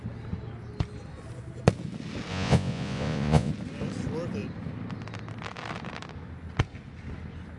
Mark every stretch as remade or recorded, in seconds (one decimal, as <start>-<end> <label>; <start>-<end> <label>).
0.0-2.3 recorded; 2.3-3.5 remade; 3.5-7.6 recorded